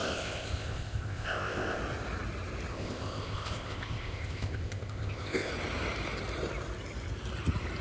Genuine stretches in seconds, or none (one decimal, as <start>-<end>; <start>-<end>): 1.8-2.7; 5.5-7.8